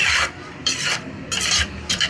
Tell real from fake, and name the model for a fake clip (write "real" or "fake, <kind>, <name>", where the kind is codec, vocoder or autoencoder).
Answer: fake, vocoder, BigVGAN v2